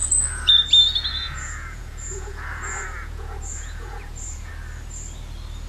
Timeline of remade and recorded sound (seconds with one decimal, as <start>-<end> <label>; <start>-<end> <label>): 0.0-0.5 remade; 0.5-1.1 recorded; 1.1-4.5 remade; 4.5-5.7 recorded